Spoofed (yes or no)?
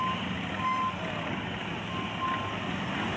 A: no